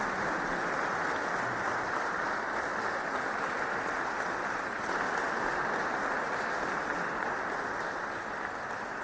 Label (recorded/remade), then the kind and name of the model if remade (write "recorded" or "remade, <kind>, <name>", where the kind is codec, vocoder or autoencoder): recorded